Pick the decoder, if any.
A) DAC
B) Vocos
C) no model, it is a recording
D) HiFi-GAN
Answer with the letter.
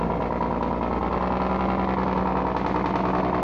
C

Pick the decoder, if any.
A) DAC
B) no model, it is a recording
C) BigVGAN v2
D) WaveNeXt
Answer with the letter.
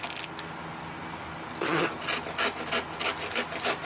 B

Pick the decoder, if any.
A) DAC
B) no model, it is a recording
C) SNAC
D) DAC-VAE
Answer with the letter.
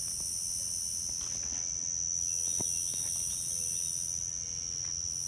B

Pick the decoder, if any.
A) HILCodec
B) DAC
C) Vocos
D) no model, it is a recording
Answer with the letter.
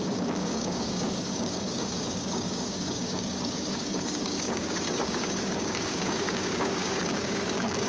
B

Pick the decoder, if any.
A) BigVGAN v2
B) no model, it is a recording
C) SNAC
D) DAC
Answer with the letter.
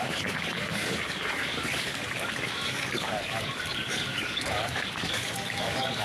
D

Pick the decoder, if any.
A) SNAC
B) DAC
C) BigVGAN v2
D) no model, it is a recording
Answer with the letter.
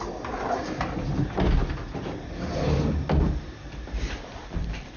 D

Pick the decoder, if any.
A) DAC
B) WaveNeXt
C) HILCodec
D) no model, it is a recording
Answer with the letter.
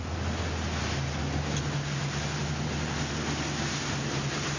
D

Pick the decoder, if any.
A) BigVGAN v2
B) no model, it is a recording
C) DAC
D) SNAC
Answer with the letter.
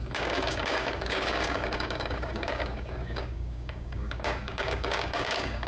C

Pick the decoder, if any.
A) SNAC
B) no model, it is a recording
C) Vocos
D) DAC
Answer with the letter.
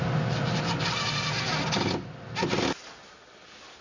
B